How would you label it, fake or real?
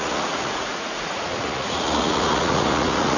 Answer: fake